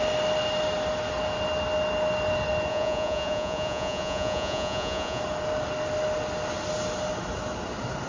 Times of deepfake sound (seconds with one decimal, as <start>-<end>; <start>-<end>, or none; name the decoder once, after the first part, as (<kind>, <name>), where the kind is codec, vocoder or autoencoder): 2.7-5.2 (vocoder, Vocos)